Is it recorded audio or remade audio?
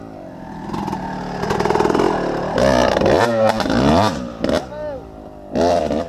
recorded